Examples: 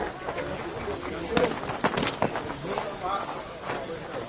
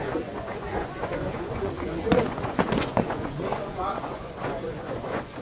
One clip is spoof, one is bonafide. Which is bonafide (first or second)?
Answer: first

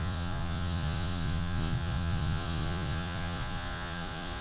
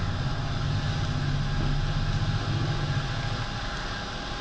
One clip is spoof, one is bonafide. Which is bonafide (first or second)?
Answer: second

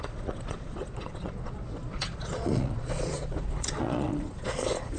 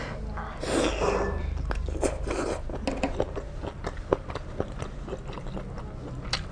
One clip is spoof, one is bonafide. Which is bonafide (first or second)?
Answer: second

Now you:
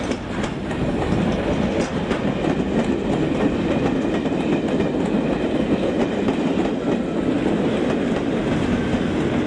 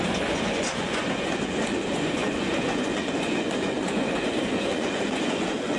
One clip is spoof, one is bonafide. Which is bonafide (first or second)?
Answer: first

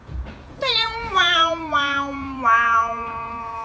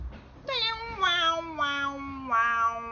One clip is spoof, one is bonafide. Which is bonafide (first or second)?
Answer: second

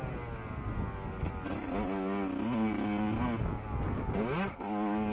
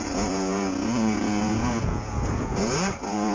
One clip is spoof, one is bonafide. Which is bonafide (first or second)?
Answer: first